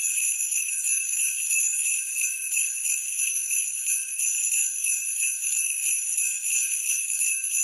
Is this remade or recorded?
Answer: remade